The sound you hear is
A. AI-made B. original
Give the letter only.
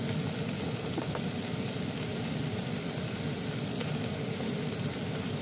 B